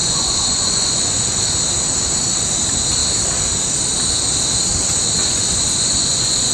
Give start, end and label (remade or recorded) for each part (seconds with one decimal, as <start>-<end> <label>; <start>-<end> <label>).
0.0-1.4 remade; 1.4-5.2 recorded; 5.2-6.5 remade